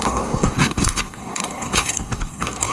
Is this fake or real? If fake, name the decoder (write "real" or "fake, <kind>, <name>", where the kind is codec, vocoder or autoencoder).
fake, codec, SNAC